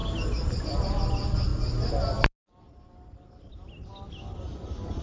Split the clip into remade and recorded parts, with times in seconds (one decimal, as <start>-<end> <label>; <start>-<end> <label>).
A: 0.0-5.0 recorded